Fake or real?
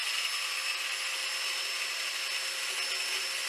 real